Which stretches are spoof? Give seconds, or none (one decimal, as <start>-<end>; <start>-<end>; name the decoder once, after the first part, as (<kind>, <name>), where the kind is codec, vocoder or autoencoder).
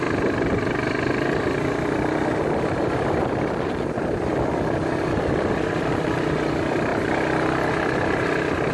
none